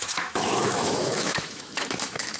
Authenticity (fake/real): fake